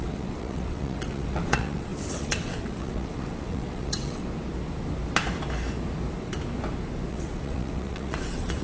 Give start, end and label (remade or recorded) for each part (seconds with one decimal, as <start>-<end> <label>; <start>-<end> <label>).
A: 0.0-4.2 remade; 4.2-7.1 recorded; 7.1-8.6 remade